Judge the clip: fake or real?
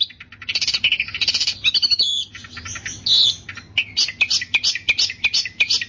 real